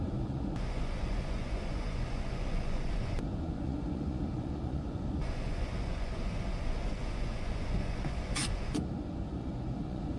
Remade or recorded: remade